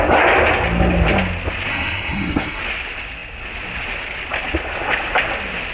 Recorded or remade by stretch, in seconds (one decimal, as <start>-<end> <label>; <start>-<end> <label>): 0.0-1.7 recorded; 1.7-2.6 remade; 2.6-5.7 recorded